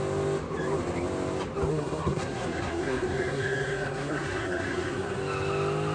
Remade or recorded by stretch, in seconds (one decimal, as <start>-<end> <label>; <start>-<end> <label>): 0.0-1.7 recorded; 1.7-5.2 remade; 5.2-5.9 recorded